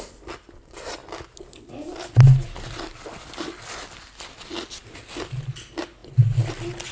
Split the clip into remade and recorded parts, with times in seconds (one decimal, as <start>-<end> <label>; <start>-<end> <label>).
0.0-6.9 recorded